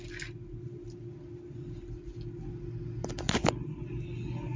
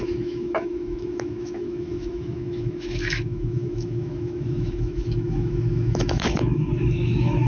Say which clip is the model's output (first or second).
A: second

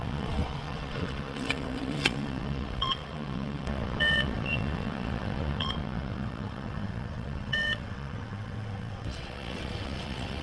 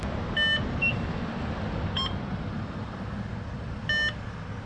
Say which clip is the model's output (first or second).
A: first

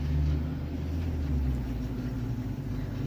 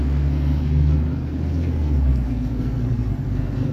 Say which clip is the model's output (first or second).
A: second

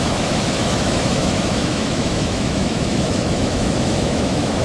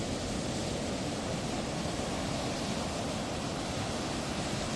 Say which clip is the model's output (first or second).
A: first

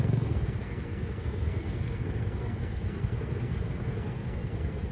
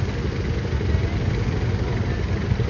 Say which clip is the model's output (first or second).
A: first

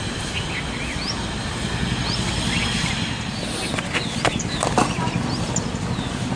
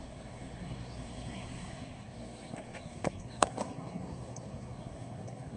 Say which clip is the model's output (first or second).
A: second